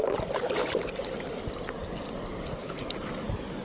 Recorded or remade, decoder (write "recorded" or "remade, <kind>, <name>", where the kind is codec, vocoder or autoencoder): recorded